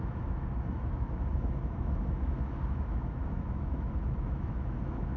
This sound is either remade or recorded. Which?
remade